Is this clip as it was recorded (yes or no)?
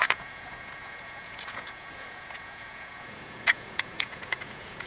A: no